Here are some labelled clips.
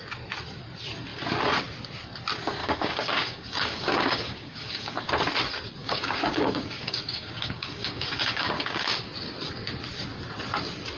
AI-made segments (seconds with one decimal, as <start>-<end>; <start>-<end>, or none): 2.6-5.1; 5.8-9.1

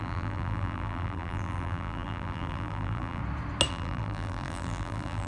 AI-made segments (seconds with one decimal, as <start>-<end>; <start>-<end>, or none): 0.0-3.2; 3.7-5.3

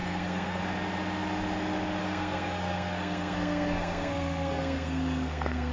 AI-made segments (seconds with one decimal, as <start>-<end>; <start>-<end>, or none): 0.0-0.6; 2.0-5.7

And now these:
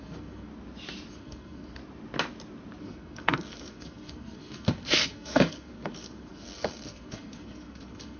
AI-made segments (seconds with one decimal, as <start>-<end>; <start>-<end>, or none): 0.0-0.5; 1.1-1.8; 2.8-8.2